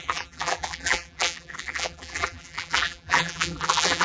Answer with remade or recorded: remade